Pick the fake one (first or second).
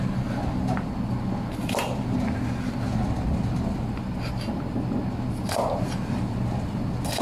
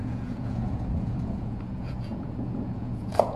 second